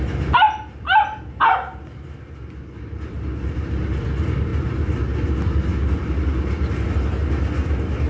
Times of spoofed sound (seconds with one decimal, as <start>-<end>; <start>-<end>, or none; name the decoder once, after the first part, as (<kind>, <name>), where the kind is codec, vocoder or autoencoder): none